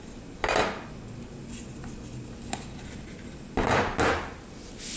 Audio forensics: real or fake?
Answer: real